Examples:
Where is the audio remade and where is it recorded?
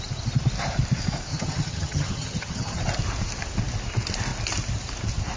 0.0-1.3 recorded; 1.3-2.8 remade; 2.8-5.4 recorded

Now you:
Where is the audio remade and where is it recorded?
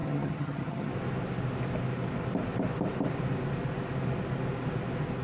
0.0-0.9 remade; 0.9-5.2 recorded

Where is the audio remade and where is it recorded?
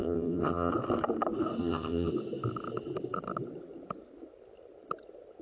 0.0-0.7 remade; 0.7-1.6 recorded; 1.6-2.1 remade; 2.1-5.4 recorded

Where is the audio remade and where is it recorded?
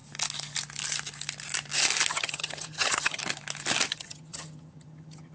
0.0-2.1 recorded; 2.1-3.2 remade; 3.2-3.9 recorded; 3.9-5.3 remade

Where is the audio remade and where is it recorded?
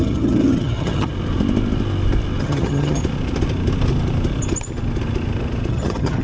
0.0-1.1 remade; 1.1-2.4 recorded; 2.4-3.0 remade; 3.0-5.7 recorded; 5.7-6.2 remade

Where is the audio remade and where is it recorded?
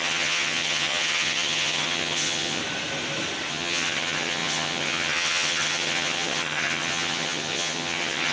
0.0-2.6 remade; 2.6-3.5 recorded; 3.5-8.3 remade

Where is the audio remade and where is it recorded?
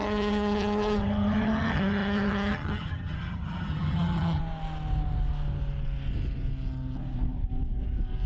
0.0-4.4 remade; 4.4-8.3 recorded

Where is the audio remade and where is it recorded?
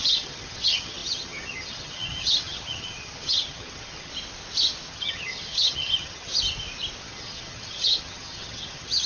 0.0-4.1 remade; 4.1-4.9 recorded; 4.9-6.3 remade; 6.3-7.0 recorded; 7.0-9.1 remade